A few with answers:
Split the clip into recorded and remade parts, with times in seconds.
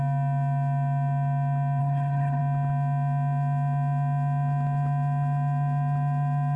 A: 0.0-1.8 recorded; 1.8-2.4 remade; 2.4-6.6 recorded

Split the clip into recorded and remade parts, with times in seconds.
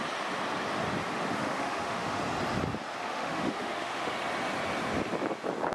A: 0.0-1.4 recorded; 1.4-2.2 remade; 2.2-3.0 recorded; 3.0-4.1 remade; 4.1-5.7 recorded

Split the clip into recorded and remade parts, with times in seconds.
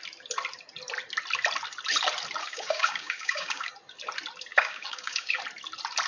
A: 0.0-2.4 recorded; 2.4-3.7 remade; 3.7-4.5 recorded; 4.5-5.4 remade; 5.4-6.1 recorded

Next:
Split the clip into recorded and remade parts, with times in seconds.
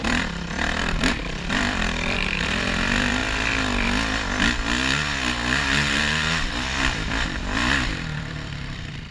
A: 0.0-3.2 remade; 3.2-6.5 recorded; 6.5-9.1 remade